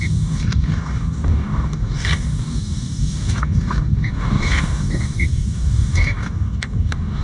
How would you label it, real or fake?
fake